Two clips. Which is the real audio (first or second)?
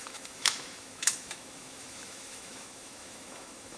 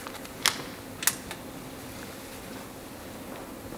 second